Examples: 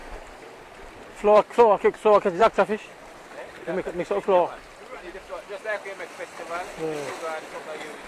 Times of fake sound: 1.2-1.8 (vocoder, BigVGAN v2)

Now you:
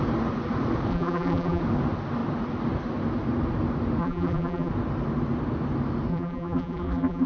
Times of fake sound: 0.9-1.6 (vocoder, BigVGAN v2); 4.0-4.7; 6.1-7.3

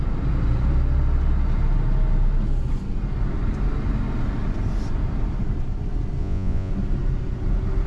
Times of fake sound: 6.2-6.7 (vocoder, Vocos)

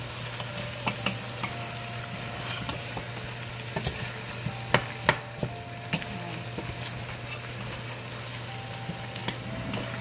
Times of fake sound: none

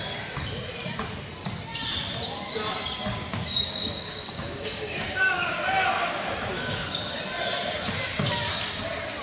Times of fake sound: 3.1-7.2 (codec, DAC)

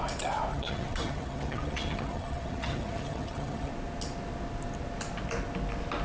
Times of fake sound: 0.5-3.7 (vocoder, HiFi-GAN)

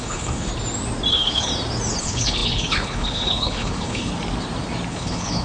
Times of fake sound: 0.0-0.5 (codec, HILCodec); 1.1-1.5; 2.0-4.1; 4.9-5.4

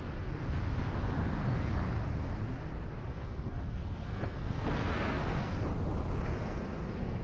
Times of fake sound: 3.1-5.6 (codec, SNAC); 6.4-7.2